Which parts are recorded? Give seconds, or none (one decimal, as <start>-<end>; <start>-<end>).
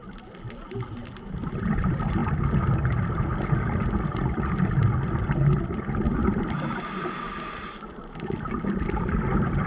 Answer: 0.0-9.7